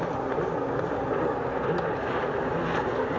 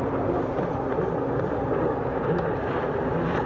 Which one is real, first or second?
first